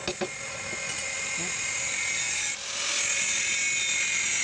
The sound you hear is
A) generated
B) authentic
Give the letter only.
B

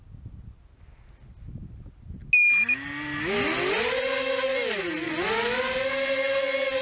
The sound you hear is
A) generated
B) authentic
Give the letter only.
B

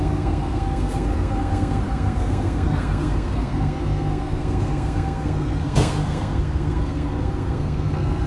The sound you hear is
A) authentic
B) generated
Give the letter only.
B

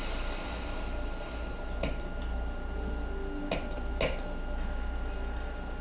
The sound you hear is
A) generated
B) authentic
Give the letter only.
B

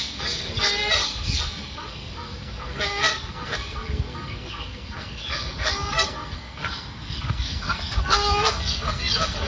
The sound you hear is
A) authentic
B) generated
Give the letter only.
B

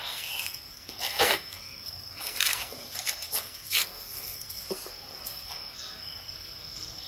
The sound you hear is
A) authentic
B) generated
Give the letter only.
B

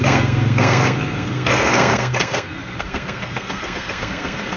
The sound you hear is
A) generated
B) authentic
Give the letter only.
A